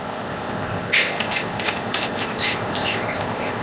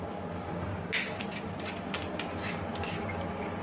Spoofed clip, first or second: first